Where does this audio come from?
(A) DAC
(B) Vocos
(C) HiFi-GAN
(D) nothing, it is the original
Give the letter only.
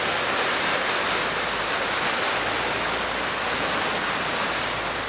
D